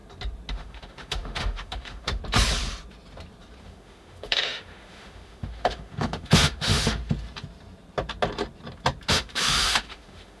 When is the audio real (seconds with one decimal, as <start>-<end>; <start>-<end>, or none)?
0.0-0.5; 2.2-3.6; 7.0-9.1